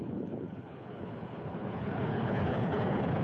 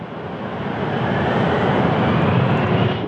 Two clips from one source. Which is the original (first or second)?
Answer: second